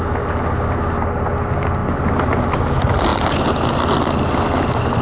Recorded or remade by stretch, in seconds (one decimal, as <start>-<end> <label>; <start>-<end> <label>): 0.0-5.0 recorded